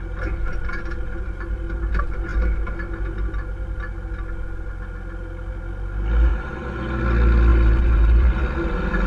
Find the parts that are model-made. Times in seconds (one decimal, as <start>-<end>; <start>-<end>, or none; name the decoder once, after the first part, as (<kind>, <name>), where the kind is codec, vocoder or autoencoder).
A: 6.3-7.0 (vocoder, BigVGAN v2); 7.5-8.4